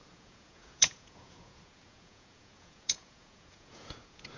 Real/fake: fake